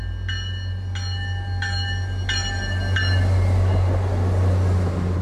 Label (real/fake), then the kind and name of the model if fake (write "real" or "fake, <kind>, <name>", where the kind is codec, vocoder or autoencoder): real